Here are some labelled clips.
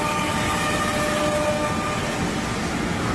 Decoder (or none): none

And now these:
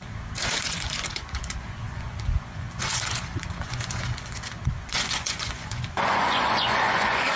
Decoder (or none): vocoder, Vocos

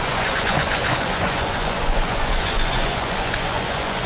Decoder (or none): vocoder, Vocos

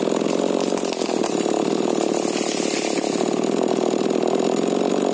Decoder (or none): none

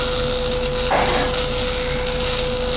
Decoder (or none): none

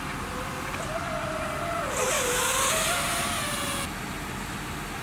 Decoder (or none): none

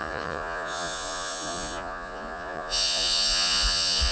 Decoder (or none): vocoder, Vocos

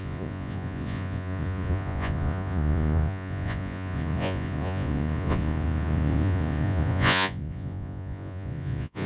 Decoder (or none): vocoder, Vocos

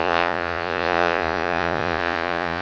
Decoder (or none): vocoder, Vocos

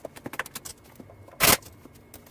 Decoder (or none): none